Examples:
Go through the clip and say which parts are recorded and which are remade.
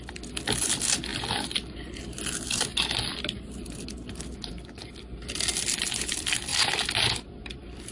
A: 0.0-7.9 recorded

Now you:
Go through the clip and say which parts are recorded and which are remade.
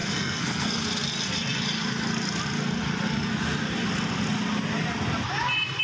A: 0.0-0.8 remade; 0.8-5.8 recorded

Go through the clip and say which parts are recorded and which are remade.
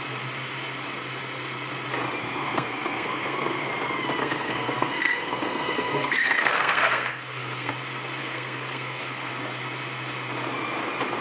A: 0.0-2.2 recorded; 2.2-3.7 remade; 3.7-4.2 recorded; 4.2-7.7 remade; 7.7-8.2 recorded; 8.2-9.3 remade; 9.3-11.2 recorded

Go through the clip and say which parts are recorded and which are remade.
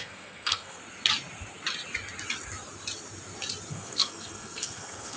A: 0.0-0.8 remade; 0.8-3.7 recorded; 3.7-5.2 remade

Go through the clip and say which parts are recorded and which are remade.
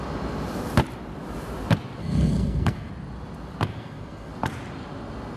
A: 0.0-2.0 recorded; 2.0-2.9 remade; 2.9-3.7 recorded; 3.7-4.3 remade; 4.3-5.4 recorded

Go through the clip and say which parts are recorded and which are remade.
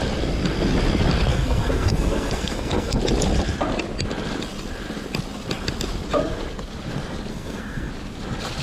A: 0.0-1.3 recorded; 1.3-3.0 remade; 3.0-7.3 recorded; 7.3-7.9 remade; 7.9-8.6 recorded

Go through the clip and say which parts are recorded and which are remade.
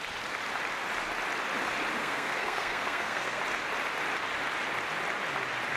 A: 0.0-2.0 recorded; 2.0-3.4 remade; 3.4-5.8 recorded